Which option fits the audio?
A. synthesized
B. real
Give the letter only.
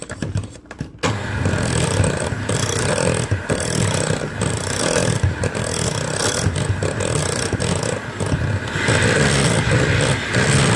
B